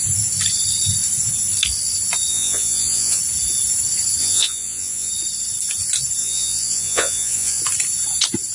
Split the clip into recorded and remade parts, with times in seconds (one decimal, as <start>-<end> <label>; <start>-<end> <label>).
0.0-2.3 recorded; 2.3-3.2 remade; 3.2-4.2 recorded; 4.2-5.1 remade; 5.1-6.2 recorded; 6.2-7.6 remade; 7.6-8.5 recorded